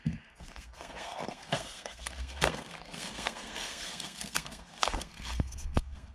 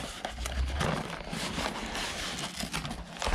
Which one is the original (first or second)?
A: second